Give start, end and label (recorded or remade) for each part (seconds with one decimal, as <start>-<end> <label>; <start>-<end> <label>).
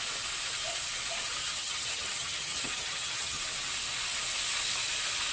0.0-1.4 recorded; 1.4-3.4 remade; 3.4-5.3 recorded